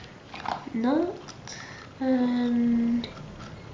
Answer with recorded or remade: recorded